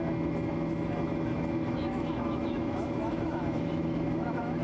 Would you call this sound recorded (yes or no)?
no